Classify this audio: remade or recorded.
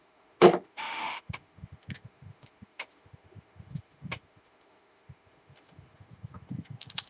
remade